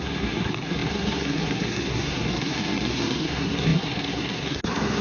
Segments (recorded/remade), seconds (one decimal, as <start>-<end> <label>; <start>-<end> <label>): 0.0-5.0 remade